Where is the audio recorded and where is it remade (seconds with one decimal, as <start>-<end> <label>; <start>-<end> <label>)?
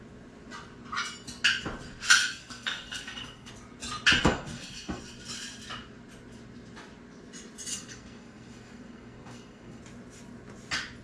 0.0-2.2 recorded; 2.2-3.5 remade; 3.5-4.2 recorded; 4.2-5.0 remade; 5.0-7.7 recorded; 7.7-9.8 remade; 9.8-11.0 recorded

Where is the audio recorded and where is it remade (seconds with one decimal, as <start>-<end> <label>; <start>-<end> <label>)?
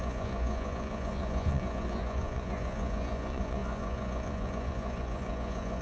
0.0-5.8 remade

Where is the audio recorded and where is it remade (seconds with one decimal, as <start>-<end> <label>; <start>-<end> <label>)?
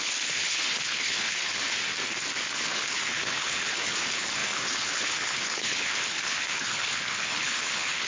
0.0-1.8 remade; 1.8-2.5 recorded; 2.5-8.1 remade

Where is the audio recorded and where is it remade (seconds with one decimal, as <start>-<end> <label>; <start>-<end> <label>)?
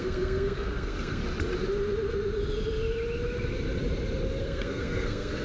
0.0-1.2 remade; 1.2-4.4 recorded; 4.4-5.4 remade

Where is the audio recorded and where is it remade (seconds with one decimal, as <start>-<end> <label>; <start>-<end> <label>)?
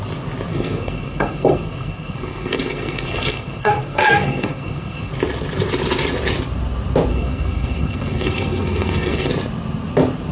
0.0-0.5 recorded; 0.5-5.1 remade; 5.1-7.1 recorded; 7.1-9.3 remade; 9.3-10.3 recorded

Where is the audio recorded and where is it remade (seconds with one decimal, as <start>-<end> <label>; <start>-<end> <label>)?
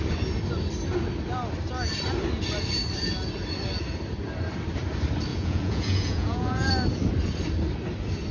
0.0-5.3 recorded; 5.3-6.7 remade; 6.7-8.3 recorded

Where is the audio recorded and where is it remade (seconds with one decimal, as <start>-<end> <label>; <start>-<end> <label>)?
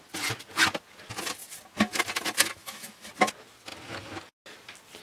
0.0-2.6 recorded; 2.6-3.1 remade; 3.1-5.0 recorded